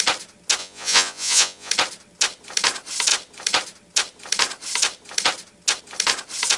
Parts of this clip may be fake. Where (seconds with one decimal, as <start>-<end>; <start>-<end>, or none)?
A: 0.6-1.7